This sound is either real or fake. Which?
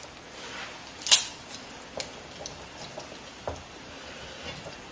real